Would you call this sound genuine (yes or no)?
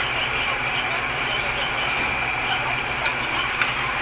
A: yes